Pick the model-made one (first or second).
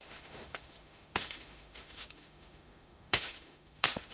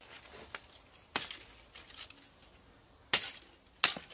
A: first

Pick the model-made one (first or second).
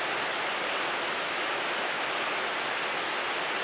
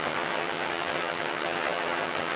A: second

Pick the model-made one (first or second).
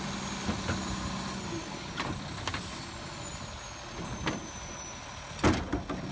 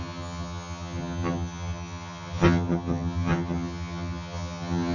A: second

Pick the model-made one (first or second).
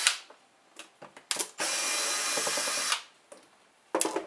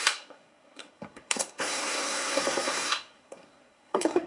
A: second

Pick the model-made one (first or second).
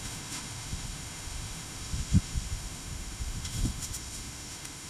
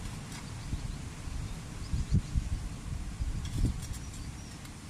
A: first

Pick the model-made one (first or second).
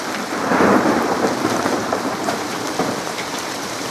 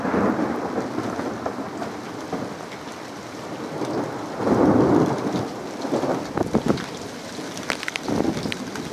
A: first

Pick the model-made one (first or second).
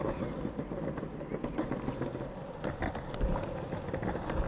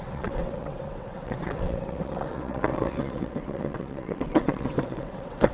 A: second